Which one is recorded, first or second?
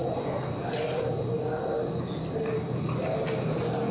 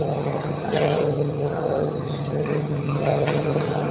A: first